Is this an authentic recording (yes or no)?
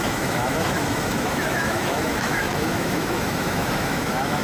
no